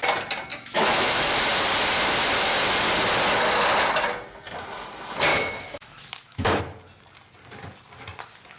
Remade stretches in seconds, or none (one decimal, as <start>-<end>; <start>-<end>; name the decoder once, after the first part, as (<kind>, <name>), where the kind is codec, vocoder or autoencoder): 0.5-1.2 (autoencoder, DAC-VAE); 5.3-6.6